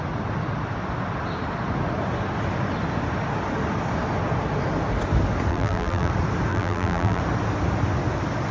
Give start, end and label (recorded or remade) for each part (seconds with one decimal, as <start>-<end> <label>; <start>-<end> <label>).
0.0-5.5 recorded; 5.5-6.1 remade; 6.1-6.5 recorded; 6.5-7.2 remade; 7.2-8.5 recorded